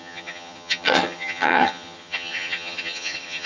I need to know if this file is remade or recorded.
remade